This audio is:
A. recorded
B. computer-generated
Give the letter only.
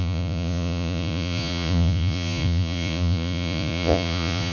B